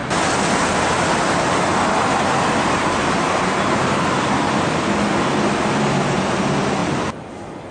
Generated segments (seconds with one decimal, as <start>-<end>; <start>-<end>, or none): none